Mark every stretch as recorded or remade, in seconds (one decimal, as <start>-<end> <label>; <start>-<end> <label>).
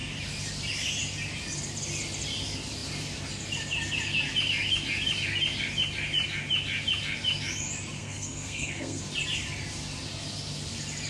0.0-8.0 recorded; 8.0-9.0 remade; 9.0-11.1 recorded